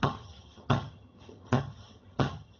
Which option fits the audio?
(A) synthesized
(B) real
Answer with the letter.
A